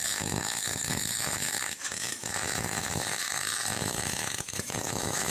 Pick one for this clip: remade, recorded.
remade